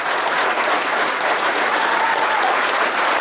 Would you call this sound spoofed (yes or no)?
yes